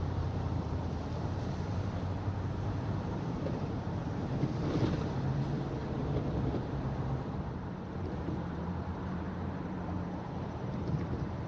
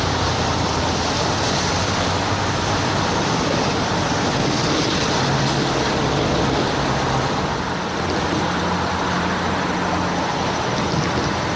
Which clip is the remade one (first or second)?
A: first